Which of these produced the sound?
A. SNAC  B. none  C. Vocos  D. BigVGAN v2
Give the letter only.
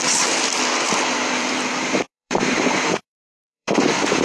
D